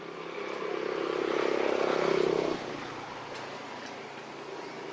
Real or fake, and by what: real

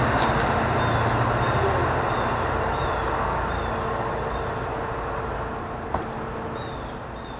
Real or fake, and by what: real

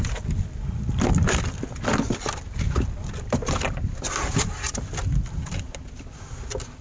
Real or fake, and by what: real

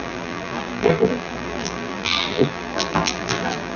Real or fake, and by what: fake, vocoder, BigVGAN v2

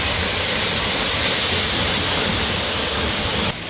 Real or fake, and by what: real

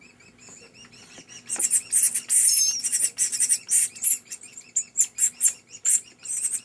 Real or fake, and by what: real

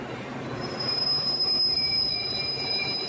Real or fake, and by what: fake, vocoder, BigVGAN v2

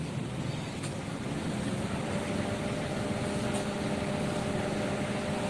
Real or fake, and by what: real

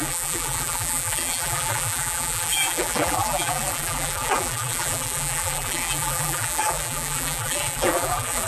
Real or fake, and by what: fake, vocoder, BigVGAN v2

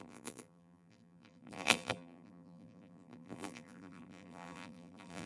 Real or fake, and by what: fake, vocoder, BigVGAN v2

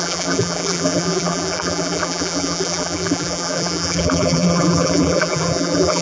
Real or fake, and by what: fake, vocoder, BigVGAN v2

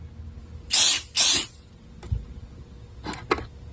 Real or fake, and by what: real